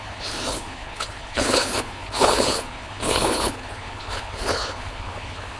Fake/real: fake